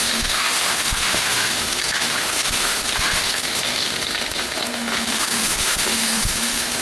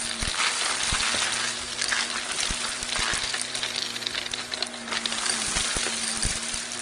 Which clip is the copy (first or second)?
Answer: first